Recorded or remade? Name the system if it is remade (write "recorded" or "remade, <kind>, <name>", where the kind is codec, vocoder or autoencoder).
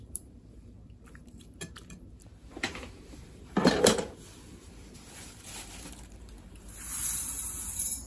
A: remade, vocoder, BigVGAN v2